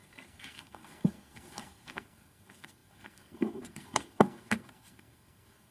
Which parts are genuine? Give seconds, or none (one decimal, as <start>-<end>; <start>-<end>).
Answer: none